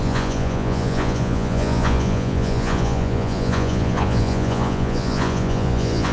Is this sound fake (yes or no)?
yes